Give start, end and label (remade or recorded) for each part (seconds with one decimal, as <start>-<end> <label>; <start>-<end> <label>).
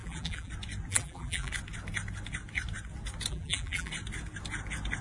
0.0-0.5 remade; 0.5-0.9 recorded; 0.9-1.5 remade; 1.5-3.3 recorded; 3.3-3.9 remade; 3.9-5.0 recorded